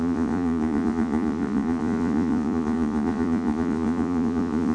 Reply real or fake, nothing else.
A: fake